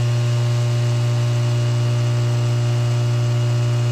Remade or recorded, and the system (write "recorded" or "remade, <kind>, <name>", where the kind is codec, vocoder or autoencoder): recorded